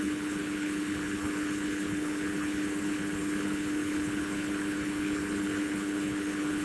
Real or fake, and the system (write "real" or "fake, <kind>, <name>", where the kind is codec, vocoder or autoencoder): fake, codec, HILCodec